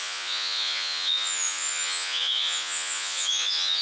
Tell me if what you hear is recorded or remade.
remade